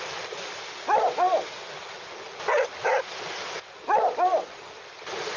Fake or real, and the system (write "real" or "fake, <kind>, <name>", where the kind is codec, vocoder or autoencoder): real